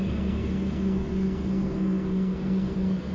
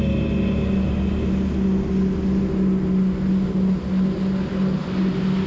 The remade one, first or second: first